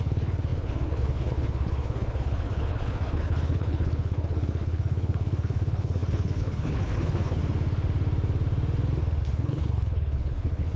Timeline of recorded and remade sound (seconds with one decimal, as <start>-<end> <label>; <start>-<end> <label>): 0.0-7.4 remade; 7.4-9.2 recorded; 9.2-10.8 remade